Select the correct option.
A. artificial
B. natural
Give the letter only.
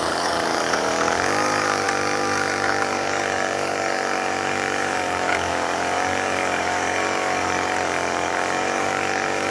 A